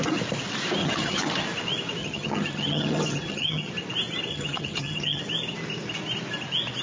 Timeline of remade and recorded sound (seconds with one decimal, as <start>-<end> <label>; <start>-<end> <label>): 0.0-0.8 recorded; 0.8-1.3 remade; 1.3-2.0 recorded; 2.0-3.7 remade; 3.7-4.3 recorded; 4.3-5.2 remade; 5.2-6.8 recorded